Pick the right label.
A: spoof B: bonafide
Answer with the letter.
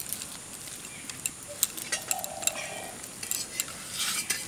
B